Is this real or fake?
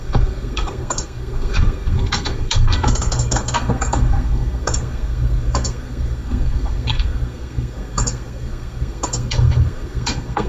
fake